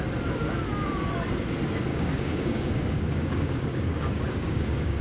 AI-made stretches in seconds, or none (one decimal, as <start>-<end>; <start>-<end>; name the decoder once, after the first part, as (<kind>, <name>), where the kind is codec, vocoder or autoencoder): 1.9-5.0 (codec, DAC)

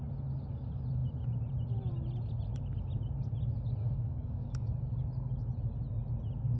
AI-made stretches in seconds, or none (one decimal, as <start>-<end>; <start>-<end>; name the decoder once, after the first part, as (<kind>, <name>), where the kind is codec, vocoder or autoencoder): 3.8-4.7 (codec, DAC)

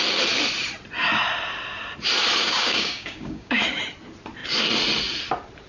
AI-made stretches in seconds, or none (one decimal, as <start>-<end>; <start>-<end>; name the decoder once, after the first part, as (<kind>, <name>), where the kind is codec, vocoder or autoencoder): 2.4-3.6 (codec, DAC)